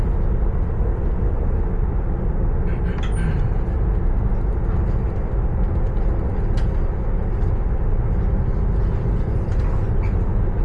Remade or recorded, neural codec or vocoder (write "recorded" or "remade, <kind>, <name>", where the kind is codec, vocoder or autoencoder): recorded